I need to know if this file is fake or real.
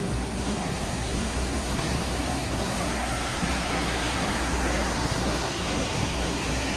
fake